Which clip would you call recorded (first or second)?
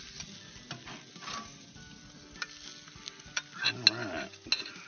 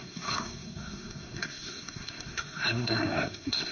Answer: first